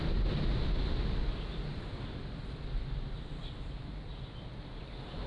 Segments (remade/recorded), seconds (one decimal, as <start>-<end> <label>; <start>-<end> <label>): 0.0-5.3 recorded